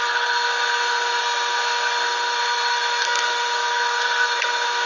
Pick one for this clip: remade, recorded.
remade